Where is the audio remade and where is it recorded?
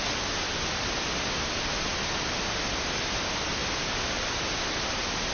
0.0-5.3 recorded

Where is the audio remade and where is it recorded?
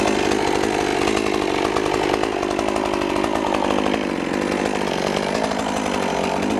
0.0-6.6 recorded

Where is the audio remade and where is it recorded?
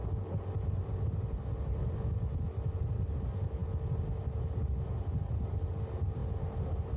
0.0-6.2 recorded; 6.2-7.0 remade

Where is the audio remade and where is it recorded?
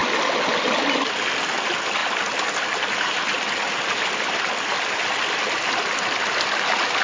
0.0-7.0 recorded